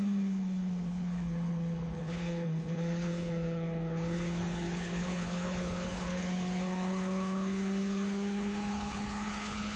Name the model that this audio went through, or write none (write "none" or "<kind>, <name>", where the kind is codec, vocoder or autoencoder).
codec, HILCodec